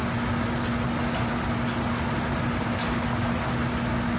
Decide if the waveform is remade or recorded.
recorded